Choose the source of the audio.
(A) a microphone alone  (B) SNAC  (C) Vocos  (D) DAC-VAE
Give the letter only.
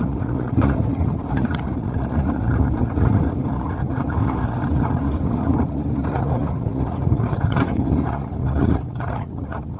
C